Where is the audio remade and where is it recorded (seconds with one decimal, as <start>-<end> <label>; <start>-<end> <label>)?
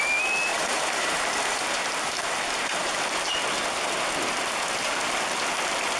0.0-0.5 recorded; 0.5-3.0 remade; 3.0-6.0 recorded